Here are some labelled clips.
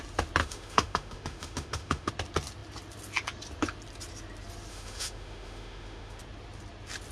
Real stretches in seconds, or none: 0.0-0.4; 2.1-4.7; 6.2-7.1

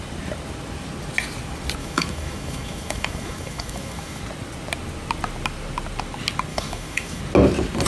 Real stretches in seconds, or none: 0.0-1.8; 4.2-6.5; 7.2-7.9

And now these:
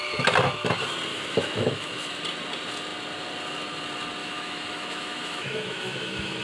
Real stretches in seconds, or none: 0.0-1.1; 2.2-4.2

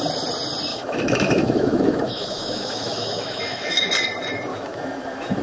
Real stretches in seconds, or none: 0.0-0.7; 3.9-4.5

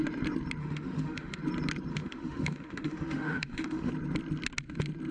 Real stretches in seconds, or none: 0.0-0.6; 1.4-1.9; 3.9-5.1